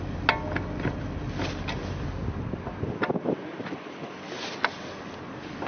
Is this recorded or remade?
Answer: recorded